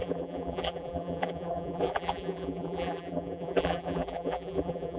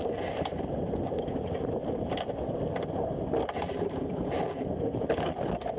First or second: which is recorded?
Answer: second